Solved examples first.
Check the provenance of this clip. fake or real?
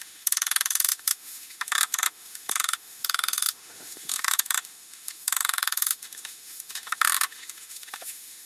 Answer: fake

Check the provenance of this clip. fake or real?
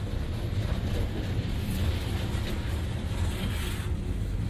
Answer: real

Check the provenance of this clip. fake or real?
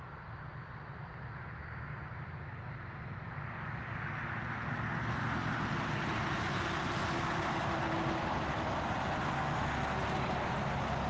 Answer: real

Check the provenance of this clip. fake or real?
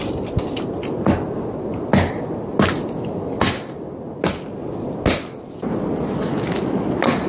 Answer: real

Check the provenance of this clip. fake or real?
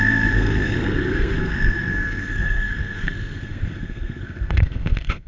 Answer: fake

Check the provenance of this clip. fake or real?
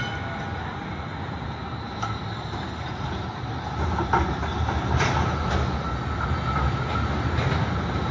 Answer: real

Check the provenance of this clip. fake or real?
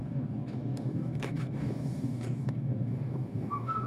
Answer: fake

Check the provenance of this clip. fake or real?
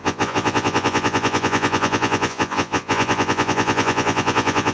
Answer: fake